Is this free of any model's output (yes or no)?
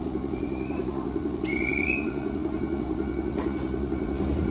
no